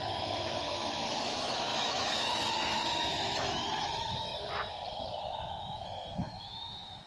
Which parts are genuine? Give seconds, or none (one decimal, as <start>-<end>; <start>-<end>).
4.3-5.6

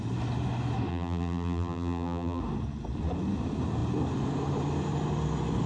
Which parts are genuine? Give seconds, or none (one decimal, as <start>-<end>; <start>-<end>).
0.0-0.9; 2.4-5.7

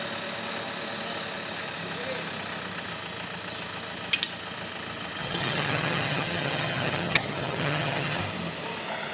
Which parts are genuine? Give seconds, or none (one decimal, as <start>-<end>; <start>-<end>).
0.0-5.2; 8.2-9.1